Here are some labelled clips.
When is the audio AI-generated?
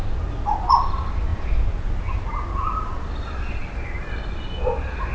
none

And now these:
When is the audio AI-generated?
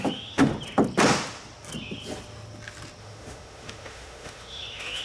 0.0-0.5 (autoencoder, DAC-VAE); 3.0-5.0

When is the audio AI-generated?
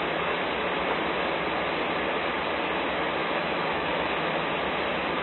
3.2-4.1 (autoencoder, DAC-VAE)